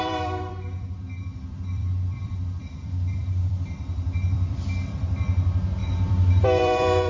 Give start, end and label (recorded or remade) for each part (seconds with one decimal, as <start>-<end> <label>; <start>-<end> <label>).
0.0-7.1 remade